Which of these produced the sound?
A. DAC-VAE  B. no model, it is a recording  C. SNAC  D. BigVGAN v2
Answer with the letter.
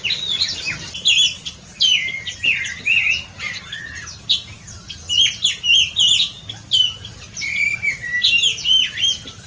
B